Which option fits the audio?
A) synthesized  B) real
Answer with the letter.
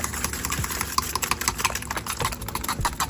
B